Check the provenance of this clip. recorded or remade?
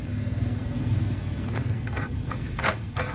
remade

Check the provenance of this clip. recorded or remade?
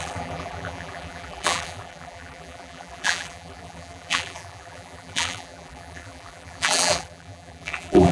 remade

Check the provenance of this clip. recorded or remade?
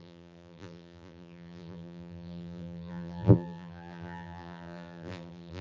remade